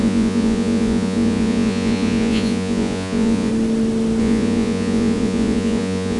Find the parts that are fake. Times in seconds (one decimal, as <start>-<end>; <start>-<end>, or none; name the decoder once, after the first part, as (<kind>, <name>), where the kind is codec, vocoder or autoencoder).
0.0-3.5 (vocoder, Vocos); 4.2-6.2